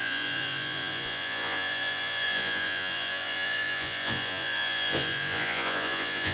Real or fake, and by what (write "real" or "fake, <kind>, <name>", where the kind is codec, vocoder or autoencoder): fake, vocoder, Vocos